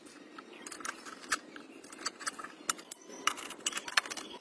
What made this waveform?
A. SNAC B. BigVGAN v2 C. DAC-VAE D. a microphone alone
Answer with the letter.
D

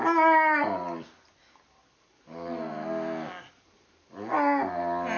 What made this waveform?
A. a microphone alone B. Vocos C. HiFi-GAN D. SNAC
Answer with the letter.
A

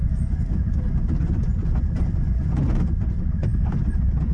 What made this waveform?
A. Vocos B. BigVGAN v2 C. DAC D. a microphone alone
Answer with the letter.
A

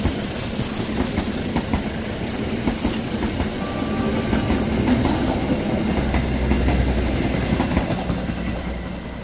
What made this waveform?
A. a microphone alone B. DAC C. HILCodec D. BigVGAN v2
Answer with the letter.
A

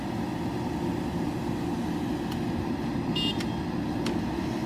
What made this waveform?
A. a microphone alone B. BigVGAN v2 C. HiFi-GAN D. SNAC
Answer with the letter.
A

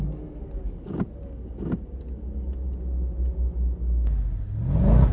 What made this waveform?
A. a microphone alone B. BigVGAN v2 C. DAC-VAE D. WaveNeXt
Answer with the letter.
A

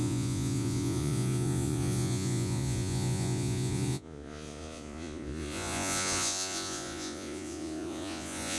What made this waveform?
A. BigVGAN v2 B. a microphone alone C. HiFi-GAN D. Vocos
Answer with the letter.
D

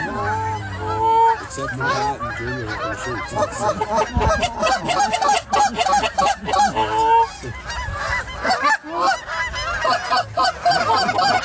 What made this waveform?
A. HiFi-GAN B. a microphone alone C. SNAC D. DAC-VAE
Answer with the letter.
B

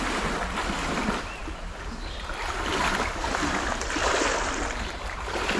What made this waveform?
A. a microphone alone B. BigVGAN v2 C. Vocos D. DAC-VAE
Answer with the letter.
A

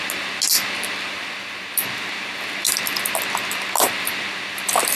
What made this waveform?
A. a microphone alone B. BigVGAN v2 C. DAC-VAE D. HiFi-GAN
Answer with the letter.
A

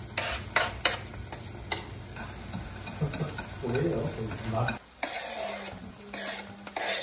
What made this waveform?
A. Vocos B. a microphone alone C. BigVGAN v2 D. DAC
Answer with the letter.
B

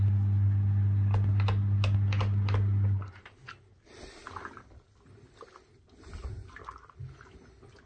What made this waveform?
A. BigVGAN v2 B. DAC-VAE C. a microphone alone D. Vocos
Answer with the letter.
C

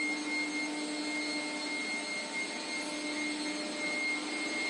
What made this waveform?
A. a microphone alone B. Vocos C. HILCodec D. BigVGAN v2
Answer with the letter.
A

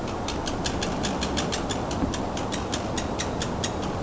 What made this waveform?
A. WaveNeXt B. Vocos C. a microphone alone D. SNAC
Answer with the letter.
C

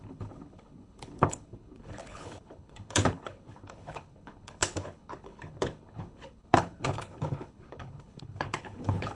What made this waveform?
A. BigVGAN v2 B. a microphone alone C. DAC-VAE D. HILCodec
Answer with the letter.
D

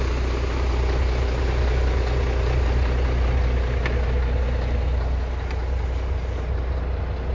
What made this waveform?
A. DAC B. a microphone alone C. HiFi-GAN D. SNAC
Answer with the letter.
B